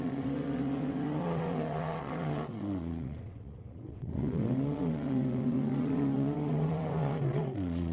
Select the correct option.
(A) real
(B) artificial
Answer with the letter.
B